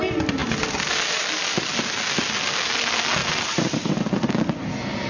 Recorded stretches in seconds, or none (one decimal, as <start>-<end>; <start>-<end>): 0.0-3.2; 4.4-5.1